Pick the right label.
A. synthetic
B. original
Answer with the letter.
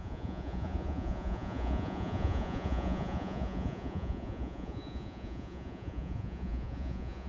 A